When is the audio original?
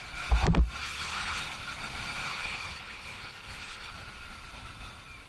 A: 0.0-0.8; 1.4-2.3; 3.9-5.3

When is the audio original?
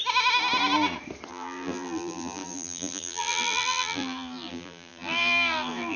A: 0.0-1.3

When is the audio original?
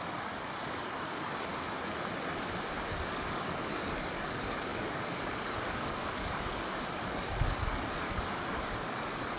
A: 1.5-3.2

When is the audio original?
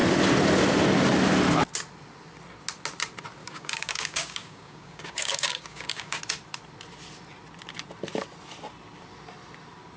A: 0.0-3.4; 6.2-10.0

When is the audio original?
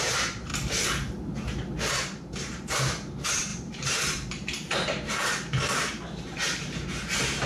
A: 0.5-1.9